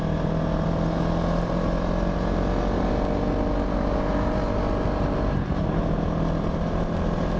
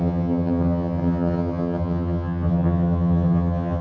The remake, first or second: second